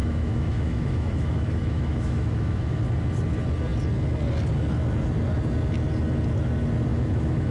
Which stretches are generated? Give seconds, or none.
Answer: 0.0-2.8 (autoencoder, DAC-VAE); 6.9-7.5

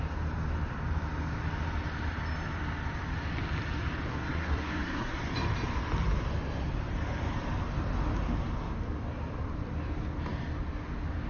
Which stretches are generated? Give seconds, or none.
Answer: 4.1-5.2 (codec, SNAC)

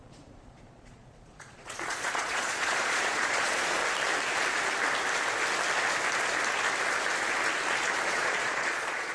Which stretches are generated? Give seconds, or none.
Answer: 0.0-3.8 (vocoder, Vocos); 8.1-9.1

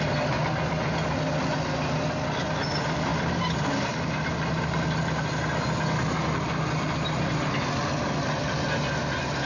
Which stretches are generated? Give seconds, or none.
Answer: none

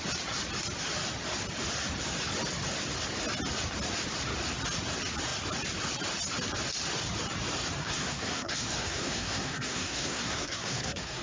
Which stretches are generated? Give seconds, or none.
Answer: 7.8-11.2 (codec, SNAC)

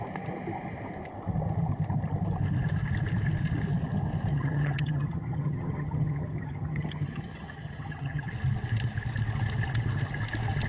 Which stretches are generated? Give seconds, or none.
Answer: 4.3-8.3 (vocoder, HiFi-GAN)

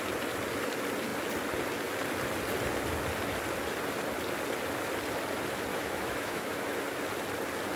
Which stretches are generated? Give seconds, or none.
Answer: 5.7-6.8 (autoencoder, DAC-VAE)